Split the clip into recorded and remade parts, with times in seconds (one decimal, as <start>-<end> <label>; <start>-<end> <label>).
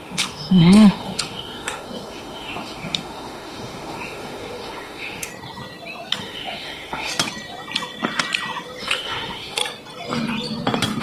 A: 0.0-5.3 remade; 5.3-6.2 recorded; 6.2-7.1 remade; 7.1-8.8 recorded; 8.8-9.6 remade; 9.6-11.0 recorded